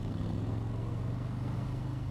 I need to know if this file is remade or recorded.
remade